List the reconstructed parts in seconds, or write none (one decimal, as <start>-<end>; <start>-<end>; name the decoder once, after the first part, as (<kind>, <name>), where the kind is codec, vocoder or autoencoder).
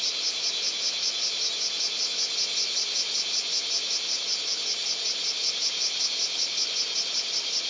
none